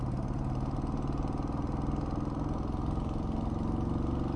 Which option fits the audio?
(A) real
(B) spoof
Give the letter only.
A